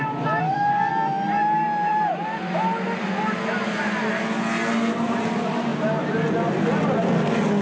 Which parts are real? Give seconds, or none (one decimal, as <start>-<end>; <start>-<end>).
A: 0.0-0.4; 0.9-7.6